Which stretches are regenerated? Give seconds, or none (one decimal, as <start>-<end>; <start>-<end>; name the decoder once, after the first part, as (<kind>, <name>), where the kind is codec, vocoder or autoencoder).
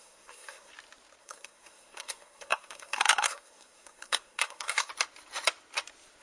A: 0.0-0.7 (codec, SNAC); 1.2-4.9